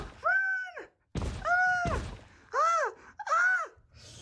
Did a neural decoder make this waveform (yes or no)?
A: no